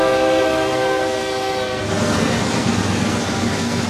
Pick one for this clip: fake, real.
fake